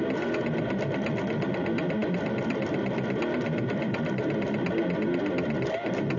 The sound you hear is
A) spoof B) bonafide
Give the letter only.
B